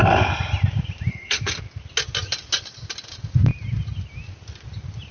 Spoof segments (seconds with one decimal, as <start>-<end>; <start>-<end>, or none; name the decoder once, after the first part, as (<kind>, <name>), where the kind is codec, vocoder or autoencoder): 1.1-1.6 (codec, SNAC)